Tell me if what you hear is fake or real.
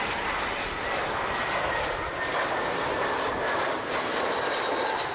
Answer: real